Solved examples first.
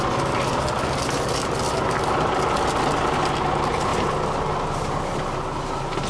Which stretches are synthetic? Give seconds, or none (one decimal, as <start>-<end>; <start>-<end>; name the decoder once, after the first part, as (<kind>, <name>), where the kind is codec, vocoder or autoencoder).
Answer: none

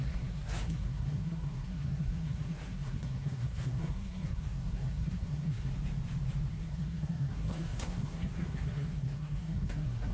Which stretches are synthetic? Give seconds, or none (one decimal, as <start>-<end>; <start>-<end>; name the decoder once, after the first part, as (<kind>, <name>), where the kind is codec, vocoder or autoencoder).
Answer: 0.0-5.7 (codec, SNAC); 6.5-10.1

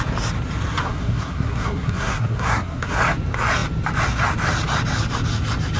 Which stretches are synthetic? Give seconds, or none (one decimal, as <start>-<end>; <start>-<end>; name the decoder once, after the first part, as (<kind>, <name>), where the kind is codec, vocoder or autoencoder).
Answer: 0.8-3.0 (codec, SNAC)

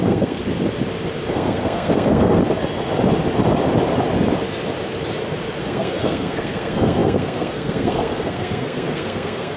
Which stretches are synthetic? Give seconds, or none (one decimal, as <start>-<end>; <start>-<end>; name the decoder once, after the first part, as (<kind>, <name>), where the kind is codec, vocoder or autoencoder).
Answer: 0.0-0.4 (codec, SNAC); 1.3-2.4; 5.6-9.6